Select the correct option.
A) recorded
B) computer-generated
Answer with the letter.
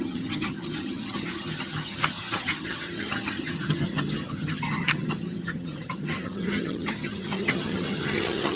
B